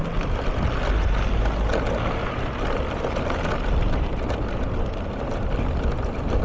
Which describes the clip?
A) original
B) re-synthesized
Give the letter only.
A